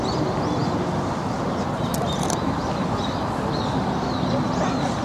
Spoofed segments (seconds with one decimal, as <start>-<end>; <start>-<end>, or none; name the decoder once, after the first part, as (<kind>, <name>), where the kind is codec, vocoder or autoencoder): 1.9-3.6 (vocoder, BigVGAN v2)